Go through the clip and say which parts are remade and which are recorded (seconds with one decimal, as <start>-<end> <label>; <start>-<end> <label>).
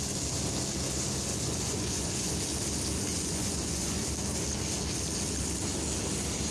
0.0-1.3 recorded; 1.3-2.3 remade; 2.3-3.1 recorded; 3.1-4.0 remade; 4.0-6.5 recorded